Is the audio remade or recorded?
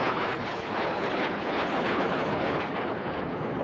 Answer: remade